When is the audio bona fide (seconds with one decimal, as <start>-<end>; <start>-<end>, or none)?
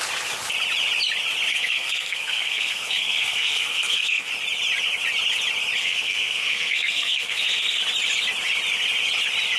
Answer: 0.0-1.5; 4.3-5.8; 7.8-9.6